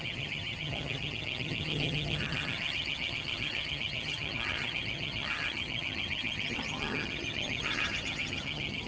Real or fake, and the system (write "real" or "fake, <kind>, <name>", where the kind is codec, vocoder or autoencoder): fake, vocoder, HiFi-GAN